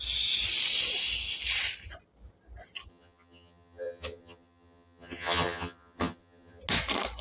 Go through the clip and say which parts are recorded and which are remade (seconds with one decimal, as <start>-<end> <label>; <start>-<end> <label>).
0.0-2.9 recorded; 2.9-6.6 remade; 6.6-7.2 recorded